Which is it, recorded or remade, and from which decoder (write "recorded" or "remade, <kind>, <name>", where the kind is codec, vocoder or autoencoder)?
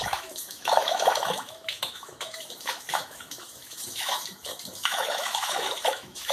remade, autoencoder, DAC-VAE